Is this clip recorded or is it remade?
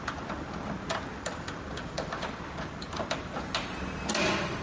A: recorded